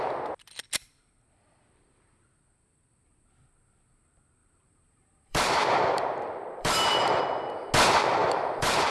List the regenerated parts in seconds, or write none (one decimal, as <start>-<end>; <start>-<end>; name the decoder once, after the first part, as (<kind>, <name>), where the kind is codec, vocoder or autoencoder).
4.4-7.2 (vocoder, BigVGAN v2); 8.2-8.9